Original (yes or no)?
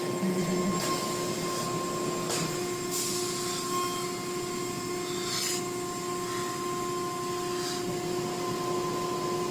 yes